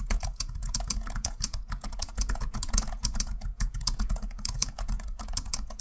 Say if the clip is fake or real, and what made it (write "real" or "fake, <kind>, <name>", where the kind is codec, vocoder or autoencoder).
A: fake, vocoder, Vocos